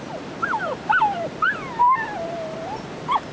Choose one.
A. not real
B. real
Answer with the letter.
A